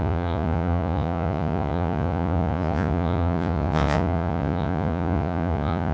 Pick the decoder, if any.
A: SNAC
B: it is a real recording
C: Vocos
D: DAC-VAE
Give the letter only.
C